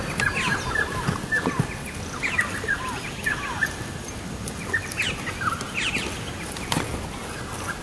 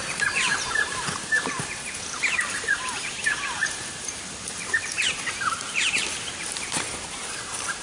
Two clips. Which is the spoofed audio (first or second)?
second